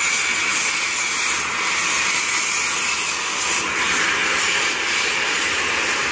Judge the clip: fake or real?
real